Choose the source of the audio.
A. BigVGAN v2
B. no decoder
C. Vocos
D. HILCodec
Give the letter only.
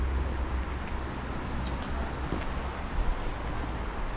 B